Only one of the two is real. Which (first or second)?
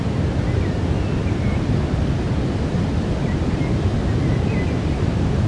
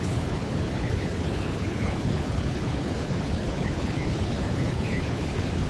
first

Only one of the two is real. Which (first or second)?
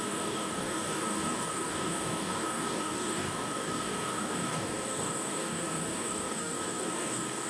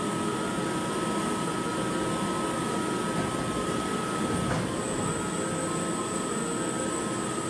second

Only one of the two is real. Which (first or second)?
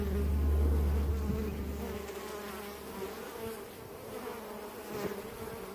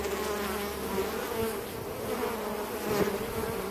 second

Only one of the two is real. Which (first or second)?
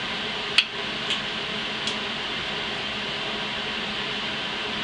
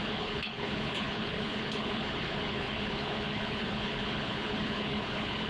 first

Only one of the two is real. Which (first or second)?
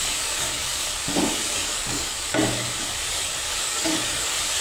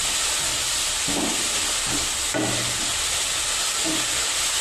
second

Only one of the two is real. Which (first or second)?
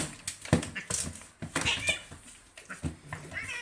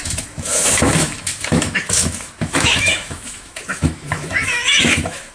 first